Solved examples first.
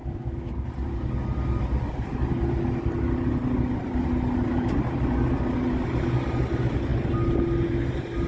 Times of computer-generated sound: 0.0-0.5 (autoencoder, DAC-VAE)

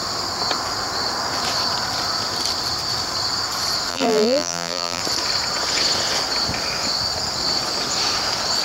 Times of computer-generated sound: 3.9-5.0 (vocoder, BigVGAN v2)

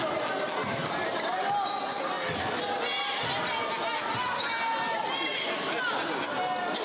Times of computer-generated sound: none

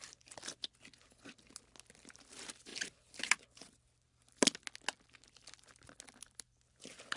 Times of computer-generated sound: none

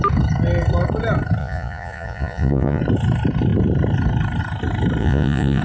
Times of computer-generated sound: 1.4-2.8 (vocoder, Vocos); 5.0-5.6

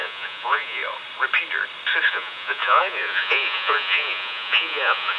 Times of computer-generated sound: 0.0-0.8 (vocoder, Vocos); 2.1-5.2